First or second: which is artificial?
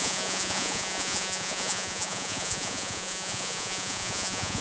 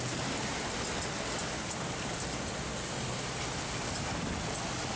first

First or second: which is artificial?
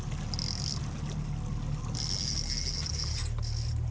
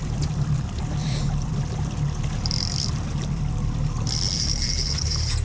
second